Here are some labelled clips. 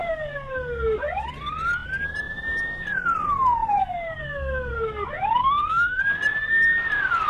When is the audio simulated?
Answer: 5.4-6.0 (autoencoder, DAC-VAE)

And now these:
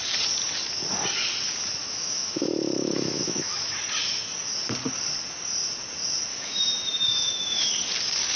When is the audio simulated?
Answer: 1.8-3.7 (autoencoder, DAC-VAE); 6.3-7.7

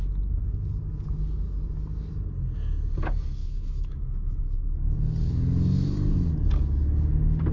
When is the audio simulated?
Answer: 3.4-4.3 (autoencoder, DAC-VAE)

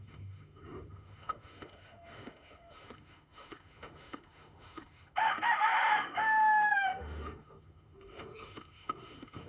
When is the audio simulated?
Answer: 0.0-9.5 (autoencoder, DAC-VAE)

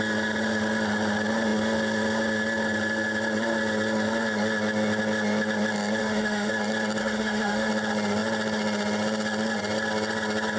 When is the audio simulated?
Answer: 6.0-6.5 (autoencoder, DAC-VAE); 7.0-7.7

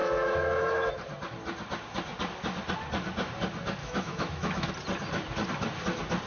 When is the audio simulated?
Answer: 0.0-0.9 (autoencoder, DAC-VAE); 3.8-4.7

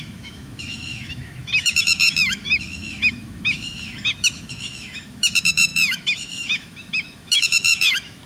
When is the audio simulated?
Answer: 0.0-8.3 (autoencoder, DAC-VAE)